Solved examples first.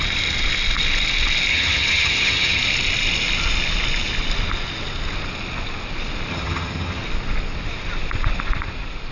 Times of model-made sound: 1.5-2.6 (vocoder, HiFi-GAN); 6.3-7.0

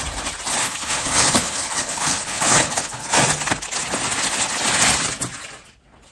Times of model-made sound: 0.6-3.2 (codec, HILCodec)

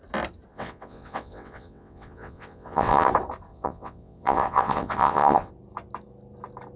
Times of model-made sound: 0.5-3.1 (vocoder, WaveNeXt); 3.5-5.5